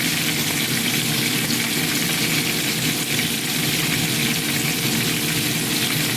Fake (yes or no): no